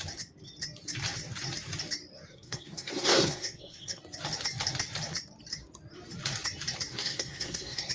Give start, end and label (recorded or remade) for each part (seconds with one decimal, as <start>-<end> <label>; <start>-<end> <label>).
0.0-2.3 recorded; 2.3-4.0 remade; 4.0-6.9 recorded; 6.9-7.9 remade